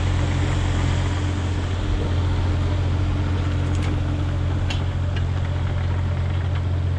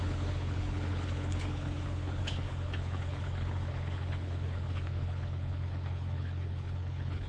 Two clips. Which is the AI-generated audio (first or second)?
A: second